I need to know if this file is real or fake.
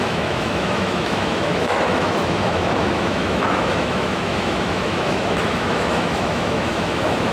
fake